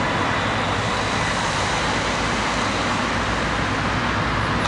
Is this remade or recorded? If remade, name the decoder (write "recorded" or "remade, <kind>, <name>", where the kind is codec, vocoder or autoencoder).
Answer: recorded